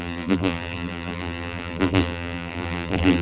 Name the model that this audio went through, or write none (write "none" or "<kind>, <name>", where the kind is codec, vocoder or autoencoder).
vocoder, BigVGAN v2